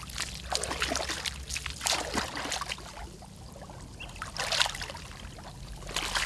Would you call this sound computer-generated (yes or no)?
no